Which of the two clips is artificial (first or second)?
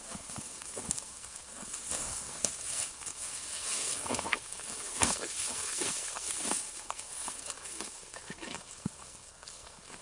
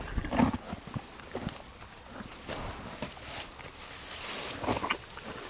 first